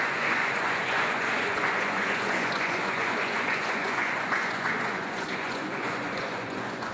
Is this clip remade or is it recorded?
remade